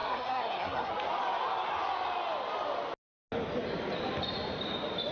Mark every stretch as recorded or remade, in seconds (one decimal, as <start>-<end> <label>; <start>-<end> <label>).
0.0-0.9 remade; 0.9-5.1 recorded